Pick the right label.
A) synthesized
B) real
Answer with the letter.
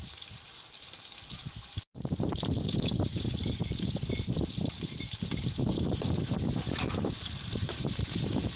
A